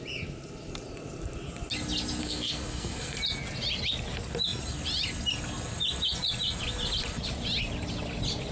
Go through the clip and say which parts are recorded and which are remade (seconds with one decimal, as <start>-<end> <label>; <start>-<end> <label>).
0.0-2.2 recorded; 2.2-3.2 remade; 3.2-8.5 recorded